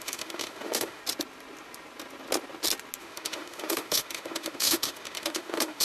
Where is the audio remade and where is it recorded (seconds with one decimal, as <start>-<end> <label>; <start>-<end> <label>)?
0.0-1.0 remade; 1.0-3.0 recorded; 3.0-5.8 remade

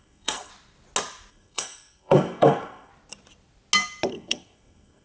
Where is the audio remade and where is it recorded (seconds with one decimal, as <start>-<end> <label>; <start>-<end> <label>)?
0.0-0.5 remade; 0.5-1.3 recorded; 1.3-2.9 remade; 2.9-4.1 recorded; 4.1-5.0 remade